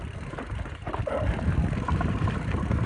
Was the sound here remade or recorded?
recorded